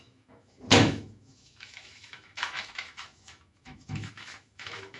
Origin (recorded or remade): remade